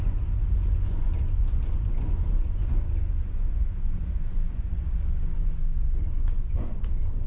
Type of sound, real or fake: fake